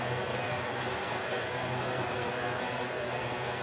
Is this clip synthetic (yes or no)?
yes